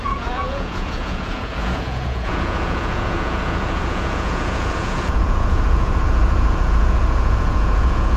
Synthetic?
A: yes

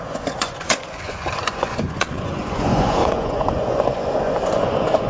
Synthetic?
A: yes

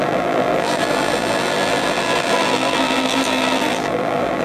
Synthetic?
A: yes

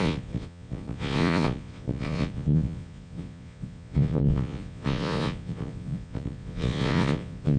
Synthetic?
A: yes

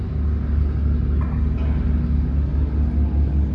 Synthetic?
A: no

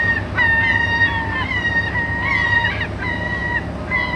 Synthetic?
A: no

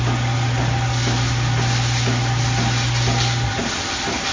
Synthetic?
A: no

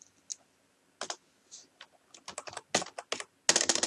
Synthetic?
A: no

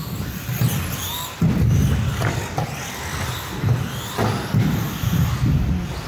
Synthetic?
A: no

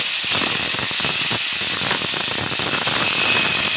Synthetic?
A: no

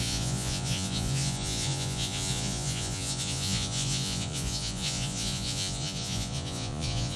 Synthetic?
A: yes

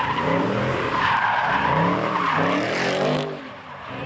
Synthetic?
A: yes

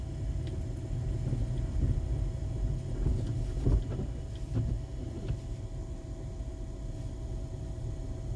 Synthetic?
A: no